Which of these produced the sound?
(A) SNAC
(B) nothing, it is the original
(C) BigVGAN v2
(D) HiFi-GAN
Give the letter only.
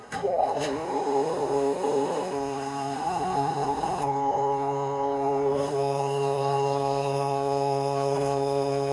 A